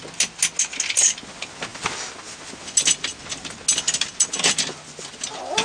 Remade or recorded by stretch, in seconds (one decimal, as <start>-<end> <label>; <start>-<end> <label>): 0.0-5.6 recorded